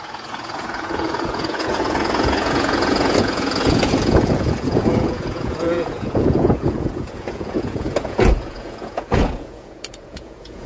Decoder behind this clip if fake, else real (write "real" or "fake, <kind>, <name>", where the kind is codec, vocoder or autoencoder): fake, vocoder, Vocos